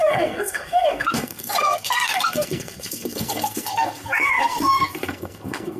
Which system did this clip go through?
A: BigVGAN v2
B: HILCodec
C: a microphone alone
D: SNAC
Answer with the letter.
D